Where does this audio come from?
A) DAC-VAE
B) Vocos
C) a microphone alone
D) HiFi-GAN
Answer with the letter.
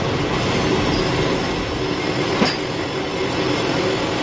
C